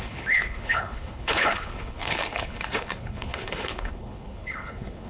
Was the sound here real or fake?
fake